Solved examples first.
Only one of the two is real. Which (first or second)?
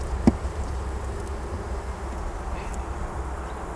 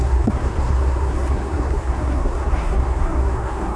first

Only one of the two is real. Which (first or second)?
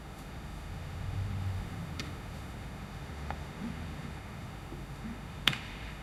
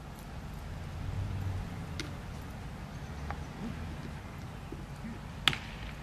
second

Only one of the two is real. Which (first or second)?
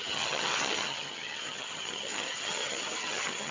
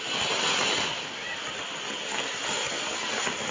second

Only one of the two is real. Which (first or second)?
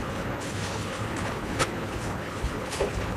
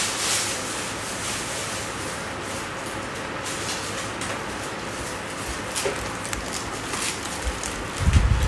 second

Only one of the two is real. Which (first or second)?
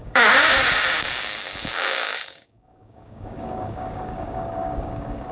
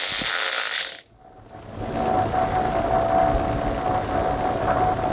second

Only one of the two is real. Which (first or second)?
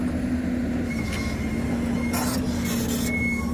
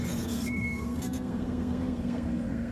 first